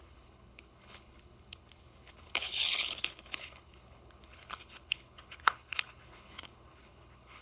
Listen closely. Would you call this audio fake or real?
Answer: fake